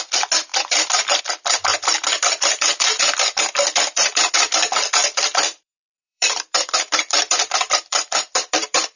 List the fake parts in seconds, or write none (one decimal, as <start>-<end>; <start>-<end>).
0.5-1.2; 1.7-4.3; 5.0-9.0